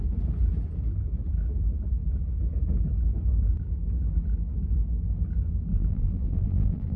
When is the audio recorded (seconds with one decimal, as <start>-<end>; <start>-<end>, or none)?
0.0-5.7